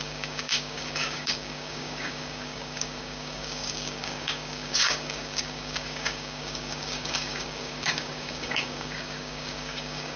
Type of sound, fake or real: fake